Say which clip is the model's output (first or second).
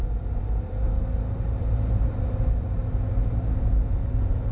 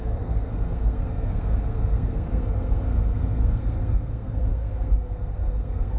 second